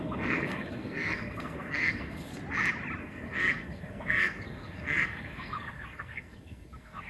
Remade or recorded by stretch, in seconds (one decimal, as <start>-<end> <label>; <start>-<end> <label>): 0.0-2.3 remade; 2.3-3.0 recorded; 3.0-7.1 remade